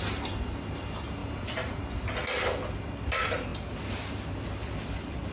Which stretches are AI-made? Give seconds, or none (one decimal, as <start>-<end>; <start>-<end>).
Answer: 1.2-1.8